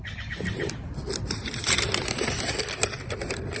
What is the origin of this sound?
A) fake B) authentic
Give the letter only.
A